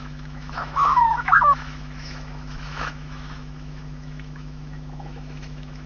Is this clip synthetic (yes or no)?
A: yes